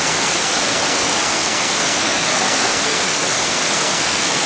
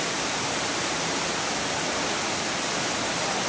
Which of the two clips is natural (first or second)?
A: second